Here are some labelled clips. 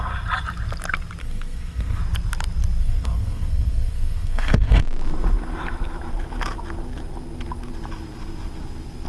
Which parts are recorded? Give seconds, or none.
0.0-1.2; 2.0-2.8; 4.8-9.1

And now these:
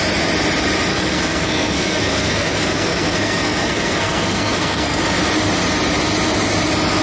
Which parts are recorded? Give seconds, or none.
0.0-0.9; 5.0-7.0

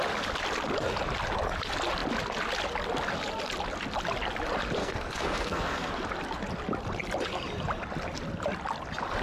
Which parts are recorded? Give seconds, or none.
0.0-4.8; 5.9-9.2

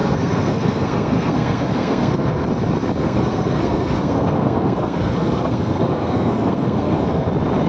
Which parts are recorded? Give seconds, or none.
2.5-3.0; 7.3-7.7

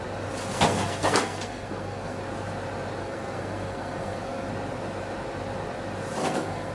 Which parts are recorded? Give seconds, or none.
0.0-0.5; 2.2-3.0; 4.5-6.2

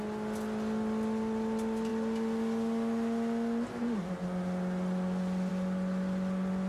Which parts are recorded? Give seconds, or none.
0.0-6.7